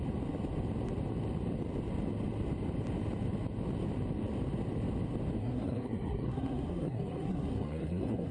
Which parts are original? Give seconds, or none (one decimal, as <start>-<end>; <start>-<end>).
0.0-5.4